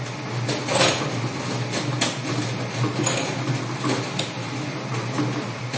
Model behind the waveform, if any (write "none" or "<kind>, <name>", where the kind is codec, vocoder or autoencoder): none